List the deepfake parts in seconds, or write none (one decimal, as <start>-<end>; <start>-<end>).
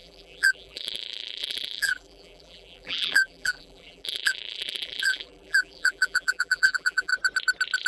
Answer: 0.0-7.1